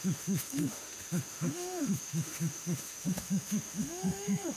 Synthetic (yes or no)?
yes